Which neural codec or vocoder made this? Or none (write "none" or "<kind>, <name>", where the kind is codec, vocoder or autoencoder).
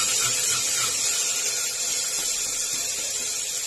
none